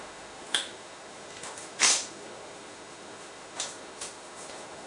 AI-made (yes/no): yes